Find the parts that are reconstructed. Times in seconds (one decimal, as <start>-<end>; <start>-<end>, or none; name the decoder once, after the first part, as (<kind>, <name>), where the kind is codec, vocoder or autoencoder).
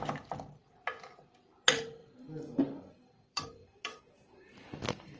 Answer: 2.0-4.0 (vocoder, BigVGAN v2)